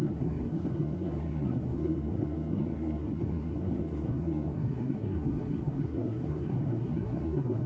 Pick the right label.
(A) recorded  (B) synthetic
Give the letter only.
B